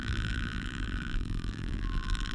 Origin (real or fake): fake